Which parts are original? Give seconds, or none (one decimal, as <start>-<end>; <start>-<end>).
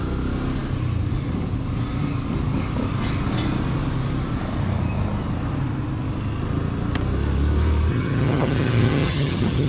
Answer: 0.0-7.9